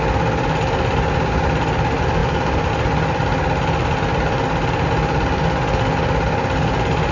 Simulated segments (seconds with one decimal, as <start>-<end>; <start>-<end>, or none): 2.2-2.7